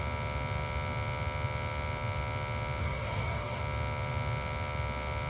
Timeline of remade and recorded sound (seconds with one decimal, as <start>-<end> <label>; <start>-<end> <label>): 0.0-2.8 recorded; 2.8-3.6 remade; 3.6-5.3 recorded